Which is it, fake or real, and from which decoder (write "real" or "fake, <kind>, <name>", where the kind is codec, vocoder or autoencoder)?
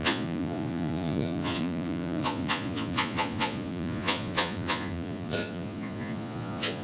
fake, vocoder, Vocos